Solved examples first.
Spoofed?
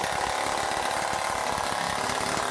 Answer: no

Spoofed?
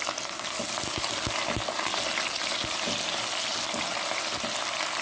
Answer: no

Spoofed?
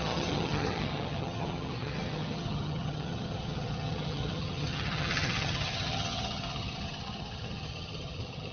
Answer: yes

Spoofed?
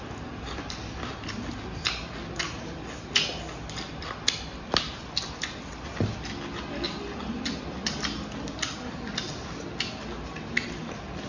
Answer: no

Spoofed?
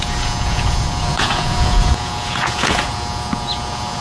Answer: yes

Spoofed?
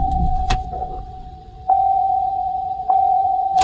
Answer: yes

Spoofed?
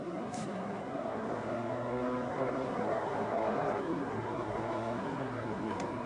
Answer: yes